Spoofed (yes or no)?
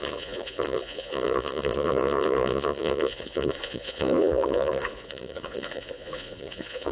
yes